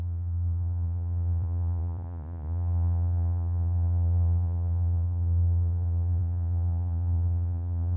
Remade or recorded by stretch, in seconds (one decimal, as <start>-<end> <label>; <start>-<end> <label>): 0.0-8.0 remade